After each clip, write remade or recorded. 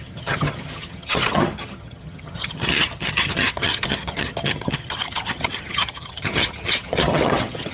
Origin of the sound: remade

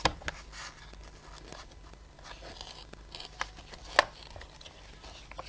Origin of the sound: recorded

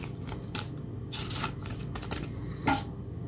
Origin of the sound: recorded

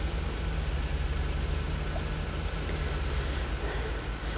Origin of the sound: recorded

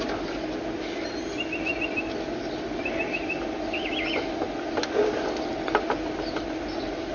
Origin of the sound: recorded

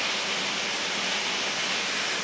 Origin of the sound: recorded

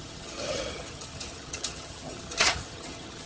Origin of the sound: remade